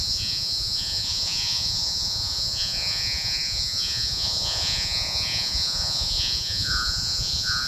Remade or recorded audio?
remade